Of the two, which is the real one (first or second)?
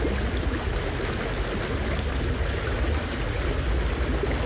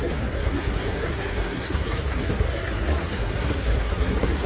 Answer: first